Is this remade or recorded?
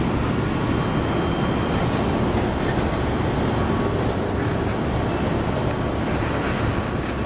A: recorded